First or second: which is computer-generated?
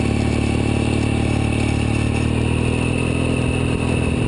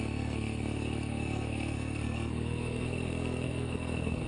second